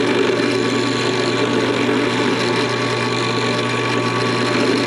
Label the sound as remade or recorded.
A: recorded